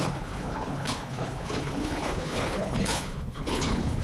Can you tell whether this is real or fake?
fake